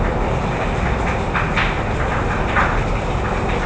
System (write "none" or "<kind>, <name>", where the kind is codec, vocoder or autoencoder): none